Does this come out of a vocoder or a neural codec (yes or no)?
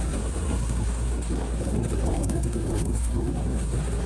yes